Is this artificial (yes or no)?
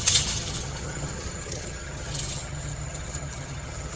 yes